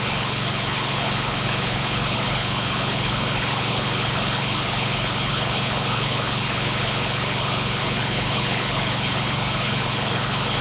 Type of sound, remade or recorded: remade